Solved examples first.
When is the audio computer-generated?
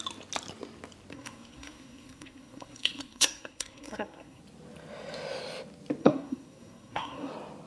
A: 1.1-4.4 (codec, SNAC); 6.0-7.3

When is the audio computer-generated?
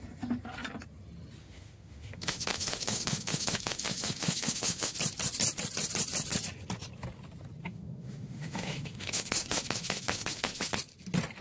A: 1.4-5.0 (autoencoder, DAC-VAE); 7.6-10.7